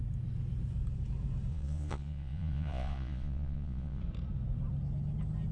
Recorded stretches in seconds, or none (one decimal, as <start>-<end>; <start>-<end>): 0.0-1.5; 4.0-5.5